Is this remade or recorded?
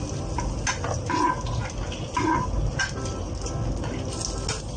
recorded